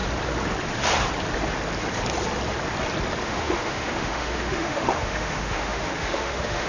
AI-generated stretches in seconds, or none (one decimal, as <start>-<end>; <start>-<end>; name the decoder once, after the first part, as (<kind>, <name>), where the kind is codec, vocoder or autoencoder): 3.2-6.7 (autoencoder, DAC-VAE)